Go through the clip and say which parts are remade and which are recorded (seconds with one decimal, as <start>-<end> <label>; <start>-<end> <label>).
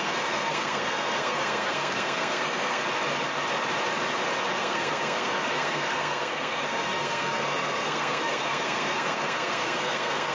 0.0-2.8 remade; 2.8-4.6 recorded; 4.6-10.3 remade